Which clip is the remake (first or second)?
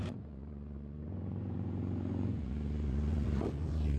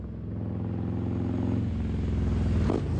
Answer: first